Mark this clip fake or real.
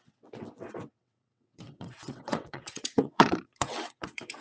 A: fake